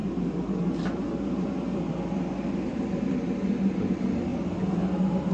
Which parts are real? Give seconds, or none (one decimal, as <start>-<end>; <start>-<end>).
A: 4.3-5.3

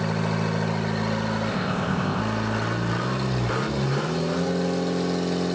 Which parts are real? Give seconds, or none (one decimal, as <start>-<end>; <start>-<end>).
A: 0.0-1.5; 2.2-5.5

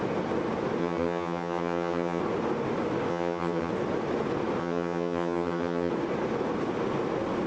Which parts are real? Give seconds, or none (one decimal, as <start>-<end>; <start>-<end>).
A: 0.0-0.8; 2.2-3.1; 3.7-4.6; 5.9-7.5

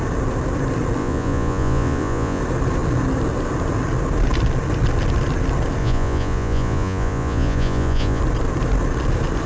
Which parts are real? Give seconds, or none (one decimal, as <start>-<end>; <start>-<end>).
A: 0.0-1.0; 2.4-5.8; 8.2-9.5

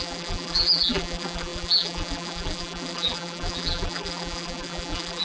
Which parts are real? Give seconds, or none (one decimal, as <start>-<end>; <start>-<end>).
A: none

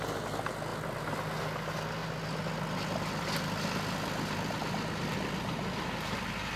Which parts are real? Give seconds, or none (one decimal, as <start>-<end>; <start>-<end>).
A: 0.0-6.6

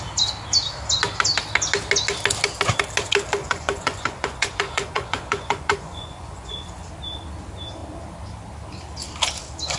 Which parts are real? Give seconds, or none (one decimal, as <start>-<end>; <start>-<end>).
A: 0.0-3.4; 6.9-9.8

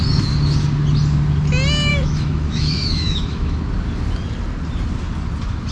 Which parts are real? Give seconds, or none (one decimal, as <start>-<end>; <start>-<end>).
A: 0.0-1.9; 3.6-5.7